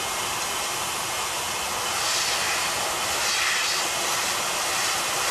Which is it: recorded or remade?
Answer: recorded